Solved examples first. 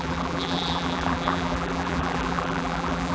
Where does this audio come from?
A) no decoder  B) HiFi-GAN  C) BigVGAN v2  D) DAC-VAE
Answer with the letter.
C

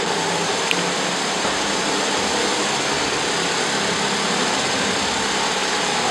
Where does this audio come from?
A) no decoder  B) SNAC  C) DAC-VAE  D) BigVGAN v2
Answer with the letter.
A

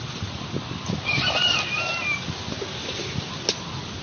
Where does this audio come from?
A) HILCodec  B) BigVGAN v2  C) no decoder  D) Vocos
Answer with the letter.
C